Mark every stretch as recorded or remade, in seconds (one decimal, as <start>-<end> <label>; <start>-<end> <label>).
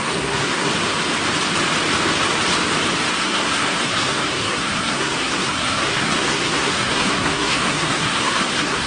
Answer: 0.0-0.7 remade; 0.7-3.1 recorded; 3.1-8.9 remade